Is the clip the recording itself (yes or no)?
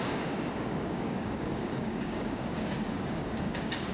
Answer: no